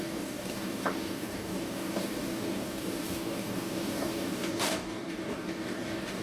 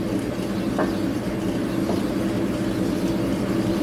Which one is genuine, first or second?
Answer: second